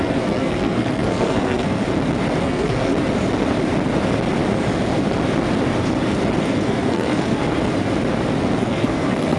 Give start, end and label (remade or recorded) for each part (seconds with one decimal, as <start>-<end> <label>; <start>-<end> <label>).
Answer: 0.0-1.8 remade; 1.8-2.4 recorded; 2.4-2.9 remade; 2.9-6.4 recorded; 6.4-7.4 remade; 7.4-8.4 recorded; 8.4-9.4 remade